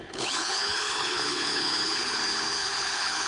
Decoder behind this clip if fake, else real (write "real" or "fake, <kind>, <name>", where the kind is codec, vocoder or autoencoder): fake, codec, HILCodec